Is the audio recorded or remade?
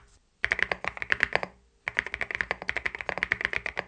recorded